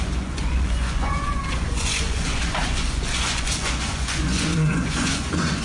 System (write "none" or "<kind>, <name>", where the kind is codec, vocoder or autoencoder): vocoder, Vocos